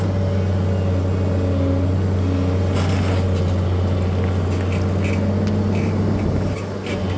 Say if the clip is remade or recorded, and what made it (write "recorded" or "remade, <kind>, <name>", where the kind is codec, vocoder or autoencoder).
recorded